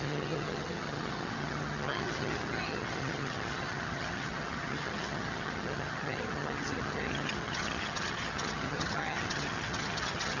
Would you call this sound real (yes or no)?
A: no